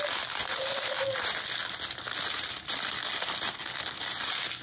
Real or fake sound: real